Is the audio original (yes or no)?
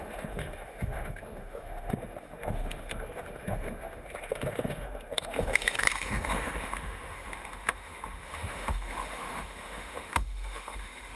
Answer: no